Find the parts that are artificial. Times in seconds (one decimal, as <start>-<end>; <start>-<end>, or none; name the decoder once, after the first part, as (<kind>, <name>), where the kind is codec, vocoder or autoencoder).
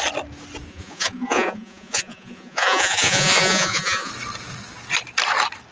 0.7-4.1 (vocoder, Vocos)